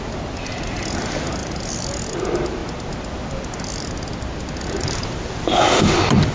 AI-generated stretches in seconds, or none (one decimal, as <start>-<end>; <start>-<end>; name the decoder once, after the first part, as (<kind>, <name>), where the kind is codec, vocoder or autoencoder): 1.4-2.2 (vocoder, BigVGAN v2)